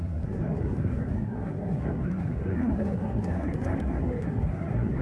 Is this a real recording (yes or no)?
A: no